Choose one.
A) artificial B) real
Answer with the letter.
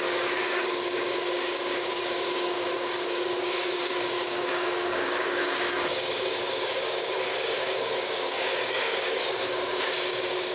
A